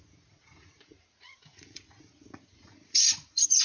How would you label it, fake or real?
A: fake